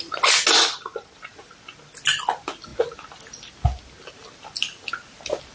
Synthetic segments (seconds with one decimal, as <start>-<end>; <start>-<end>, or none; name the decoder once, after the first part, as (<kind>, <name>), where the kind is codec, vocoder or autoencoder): none